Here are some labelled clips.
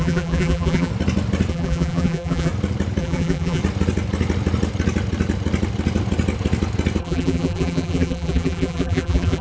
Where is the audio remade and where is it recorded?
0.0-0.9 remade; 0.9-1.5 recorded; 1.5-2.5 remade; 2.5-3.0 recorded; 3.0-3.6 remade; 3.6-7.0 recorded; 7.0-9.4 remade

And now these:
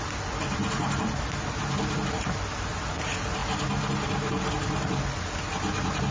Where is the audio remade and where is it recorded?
0.0-6.1 recorded

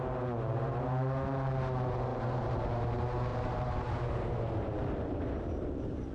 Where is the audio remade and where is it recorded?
0.0-2.1 recorded; 2.1-2.6 remade; 2.6-3.3 recorded; 3.3-6.1 remade

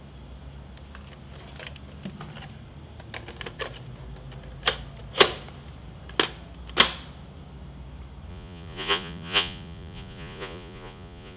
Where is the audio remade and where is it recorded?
0.0-8.3 recorded; 8.3-11.4 remade

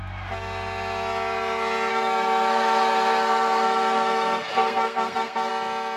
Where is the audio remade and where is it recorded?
0.0-1.9 recorded; 1.9-5.5 remade; 5.5-6.0 recorded

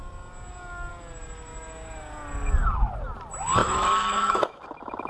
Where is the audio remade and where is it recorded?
0.0-3.6 recorded; 3.6-4.6 remade; 4.6-5.1 recorded

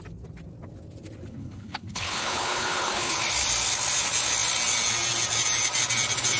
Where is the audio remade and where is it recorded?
0.0-1.3 recorded; 1.3-3.2 remade; 3.2-6.4 recorded

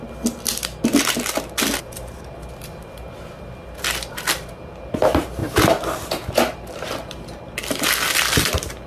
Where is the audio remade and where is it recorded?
0.0-8.9 recorded